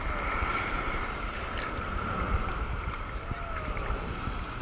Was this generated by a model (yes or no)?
no